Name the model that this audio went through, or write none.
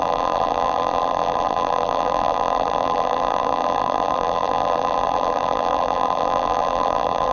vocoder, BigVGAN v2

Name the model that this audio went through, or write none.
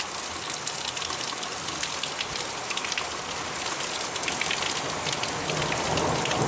none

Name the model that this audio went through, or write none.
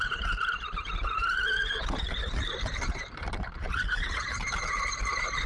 vocoder, BigVGAN v2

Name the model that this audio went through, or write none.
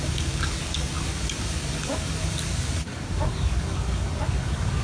codec, DAC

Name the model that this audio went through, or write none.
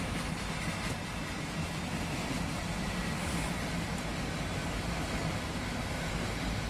none